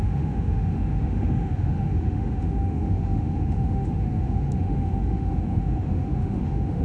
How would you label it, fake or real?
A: fake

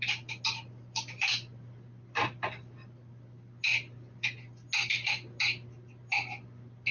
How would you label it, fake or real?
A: real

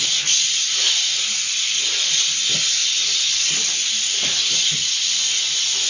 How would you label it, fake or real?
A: real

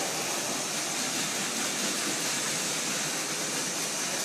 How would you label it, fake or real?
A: real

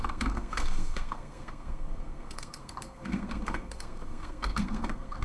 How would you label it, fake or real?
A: fake